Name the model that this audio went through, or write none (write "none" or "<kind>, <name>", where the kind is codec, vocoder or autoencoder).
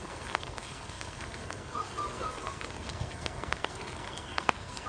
codec, SNAC